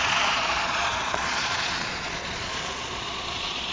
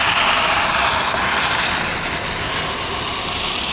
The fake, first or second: first